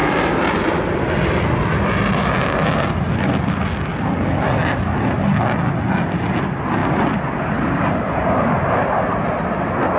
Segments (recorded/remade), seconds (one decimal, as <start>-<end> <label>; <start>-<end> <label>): 0.0-10.0 recorded